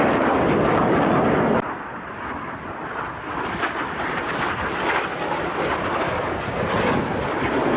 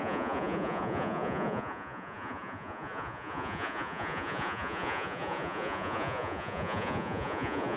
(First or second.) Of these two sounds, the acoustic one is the first